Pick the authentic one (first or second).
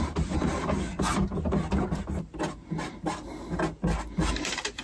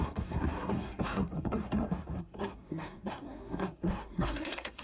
first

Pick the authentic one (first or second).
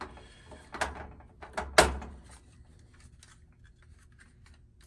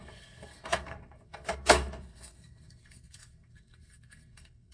first